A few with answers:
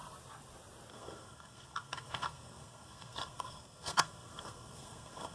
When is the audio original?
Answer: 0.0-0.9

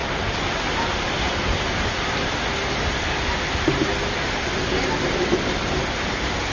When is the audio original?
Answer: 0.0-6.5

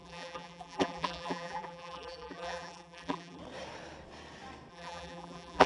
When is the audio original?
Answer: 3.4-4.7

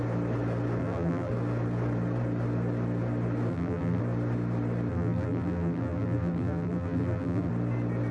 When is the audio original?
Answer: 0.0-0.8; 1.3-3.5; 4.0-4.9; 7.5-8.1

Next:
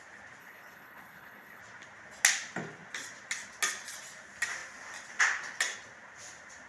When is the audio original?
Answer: 0.0-0.4; 1.6-6.7

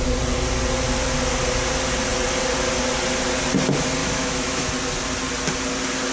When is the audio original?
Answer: 0.0-4.0; 4.7-6.1